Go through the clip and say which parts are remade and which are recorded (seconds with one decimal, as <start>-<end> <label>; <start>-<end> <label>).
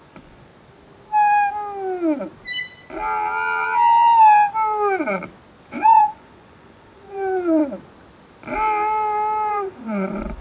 0.0-0.5 remade; 0.5-5.6 recorded; 5.6-7.6 remade; 7.6-9.5 recorded; 9.5-10.4 remade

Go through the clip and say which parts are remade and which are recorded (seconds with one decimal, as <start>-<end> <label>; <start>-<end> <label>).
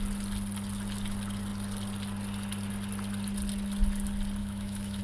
0.0-4.4 recorded; 4.4-5.0 remade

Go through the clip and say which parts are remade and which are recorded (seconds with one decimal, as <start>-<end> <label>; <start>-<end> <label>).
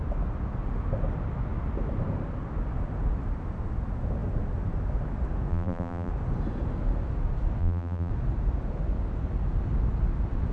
0.0-5.5 recorded; 5.5-6.1 remade; 6.1-7.6 recorded; 7.6-8.1 remade; 8.1-10.5 recorded